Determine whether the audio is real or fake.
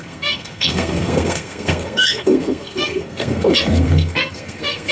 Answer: fake